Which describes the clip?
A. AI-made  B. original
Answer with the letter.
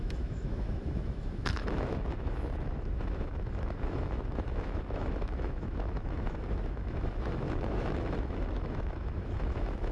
A